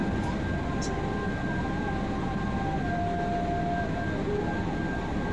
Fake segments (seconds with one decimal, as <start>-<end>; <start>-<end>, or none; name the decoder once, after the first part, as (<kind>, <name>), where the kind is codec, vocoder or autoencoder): none